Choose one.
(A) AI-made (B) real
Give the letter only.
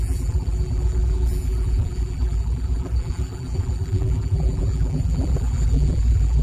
A